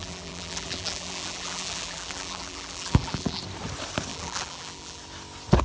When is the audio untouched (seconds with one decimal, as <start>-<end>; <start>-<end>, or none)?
3.4-4.1; 5.0-5.6

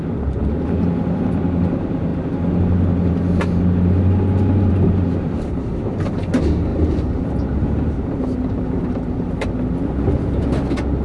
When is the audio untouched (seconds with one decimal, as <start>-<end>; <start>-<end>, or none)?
0.0-6.7; 9.5-11.0

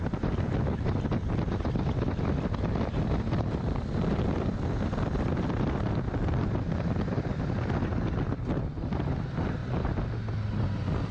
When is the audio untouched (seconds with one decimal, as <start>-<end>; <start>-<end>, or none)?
7.9-8.6; 9.6-10.6

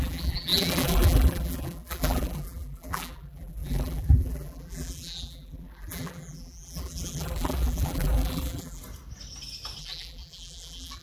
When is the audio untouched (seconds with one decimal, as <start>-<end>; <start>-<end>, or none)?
8.8-9.8

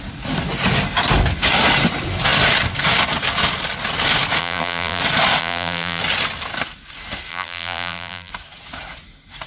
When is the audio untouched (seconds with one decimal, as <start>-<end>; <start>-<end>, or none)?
0.0-4.4; 5.0-5.4; 6.0-7.3; 8.3-9.5

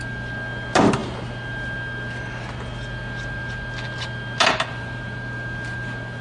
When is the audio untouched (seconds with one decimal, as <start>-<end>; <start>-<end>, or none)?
0.0-6.2

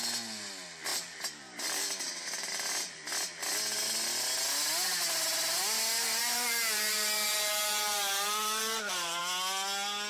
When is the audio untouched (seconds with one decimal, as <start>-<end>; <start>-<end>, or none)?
0.0-0.9; 3.1-6.2; 9.2-10.1

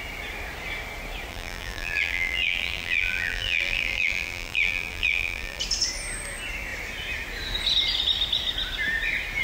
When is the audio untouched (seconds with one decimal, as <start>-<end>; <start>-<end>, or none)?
0.0-1.3; 5.6-9.4